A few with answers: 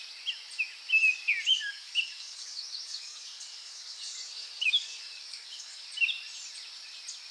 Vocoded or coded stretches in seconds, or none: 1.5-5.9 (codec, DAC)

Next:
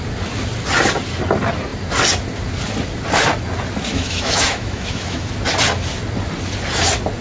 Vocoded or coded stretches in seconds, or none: 3.9-5.3 (autoencoder, DAC-VAE)